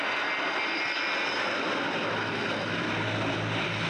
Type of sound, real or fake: real